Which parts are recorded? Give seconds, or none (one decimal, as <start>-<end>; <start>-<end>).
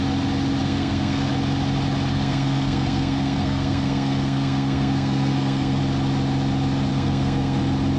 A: 0.0-0.6; 1.3-2.1; 5.8-6.9; 7.6-8.0